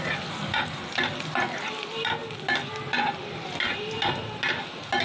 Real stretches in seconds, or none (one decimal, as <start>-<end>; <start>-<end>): 0.0-5.0